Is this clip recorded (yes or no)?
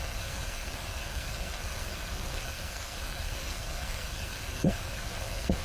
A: no